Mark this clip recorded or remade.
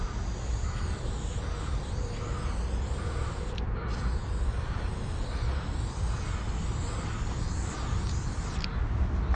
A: recorded